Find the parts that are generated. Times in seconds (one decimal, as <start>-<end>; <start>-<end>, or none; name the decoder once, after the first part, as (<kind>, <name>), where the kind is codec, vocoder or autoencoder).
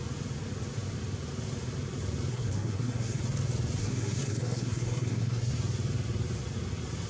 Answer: 2.3-3.2 (codec, SNAC); 3.8-5.5